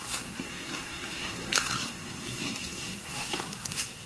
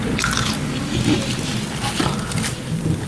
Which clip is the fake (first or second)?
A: first